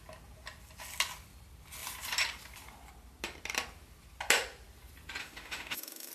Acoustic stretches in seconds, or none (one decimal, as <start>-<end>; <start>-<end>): 0.0-5.2